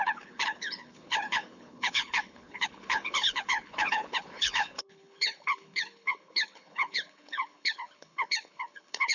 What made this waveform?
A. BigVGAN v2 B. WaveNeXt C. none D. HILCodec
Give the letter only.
D